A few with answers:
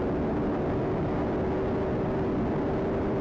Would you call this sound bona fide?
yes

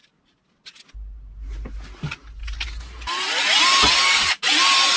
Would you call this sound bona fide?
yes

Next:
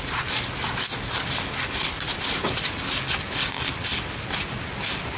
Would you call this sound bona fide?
yes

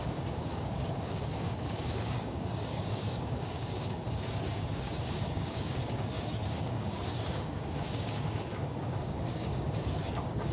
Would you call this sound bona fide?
no